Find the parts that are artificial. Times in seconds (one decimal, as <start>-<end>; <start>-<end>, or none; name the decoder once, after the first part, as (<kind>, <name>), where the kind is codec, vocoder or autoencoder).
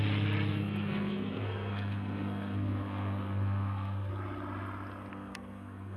0.5-4.1 (codec, SNAC); 5.1-6.0